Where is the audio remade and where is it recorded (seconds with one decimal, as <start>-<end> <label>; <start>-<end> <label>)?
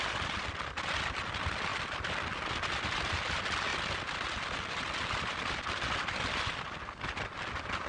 0.0-7.9 recorded